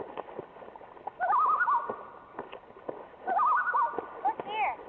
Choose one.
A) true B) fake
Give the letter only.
A